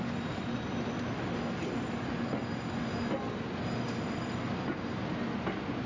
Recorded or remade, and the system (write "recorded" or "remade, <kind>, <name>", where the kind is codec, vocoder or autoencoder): recorded